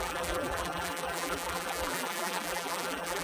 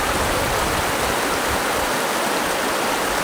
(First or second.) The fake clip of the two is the first